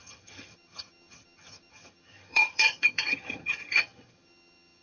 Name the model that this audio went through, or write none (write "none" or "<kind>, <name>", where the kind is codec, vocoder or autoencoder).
vocoder, HiFi-GAN